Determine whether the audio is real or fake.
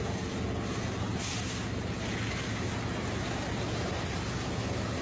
real